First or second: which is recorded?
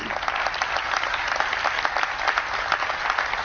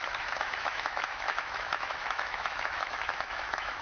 first